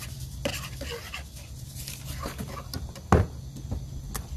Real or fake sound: real